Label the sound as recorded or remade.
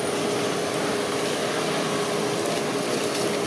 recorded